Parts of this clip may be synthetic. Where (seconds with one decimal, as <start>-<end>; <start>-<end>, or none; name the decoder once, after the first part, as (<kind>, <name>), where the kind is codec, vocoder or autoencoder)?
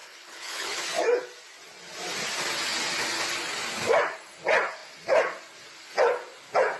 0.0-0.8 (codec, HILCodec)